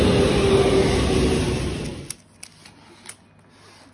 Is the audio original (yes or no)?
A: yes